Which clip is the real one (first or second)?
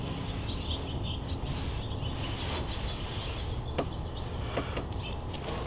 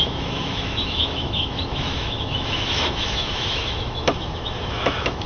first